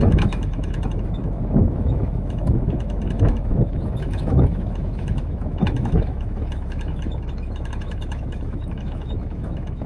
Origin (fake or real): fake